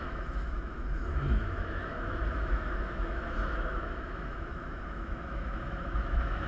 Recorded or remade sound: remade